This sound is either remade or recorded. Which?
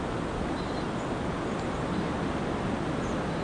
recorded